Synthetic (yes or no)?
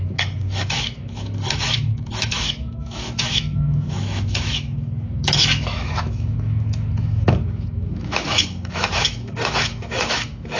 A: yes